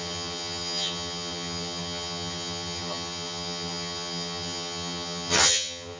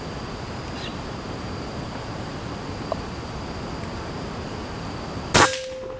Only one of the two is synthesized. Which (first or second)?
first